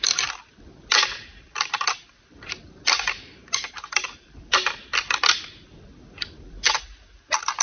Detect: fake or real real